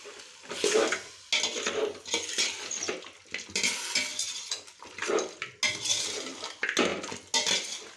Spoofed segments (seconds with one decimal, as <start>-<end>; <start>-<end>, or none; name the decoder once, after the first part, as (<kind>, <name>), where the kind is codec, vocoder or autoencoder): none